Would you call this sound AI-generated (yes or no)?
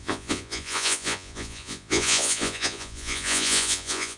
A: yes